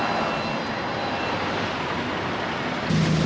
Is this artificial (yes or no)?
no